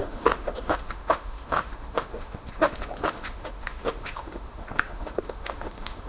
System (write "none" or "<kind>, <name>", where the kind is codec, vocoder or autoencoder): autoencoder, DAC-VAE